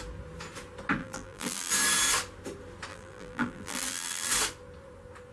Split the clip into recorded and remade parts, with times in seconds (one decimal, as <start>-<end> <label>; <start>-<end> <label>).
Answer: 0.0-1.0 recorded; 1.0-1.7 remade; 1.7-2.9 recorded; 2.9-4.3 remade; 4.3-5.3 recorded